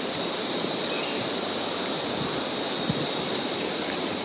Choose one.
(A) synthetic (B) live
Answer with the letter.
B